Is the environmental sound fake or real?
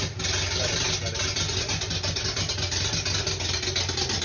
real